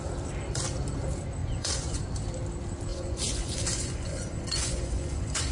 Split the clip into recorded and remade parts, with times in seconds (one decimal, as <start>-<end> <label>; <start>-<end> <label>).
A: 0.0-1.4 recorded; 1.4-2.0 remade; 2.0-2.9 recorded; 2.9-5.5 remade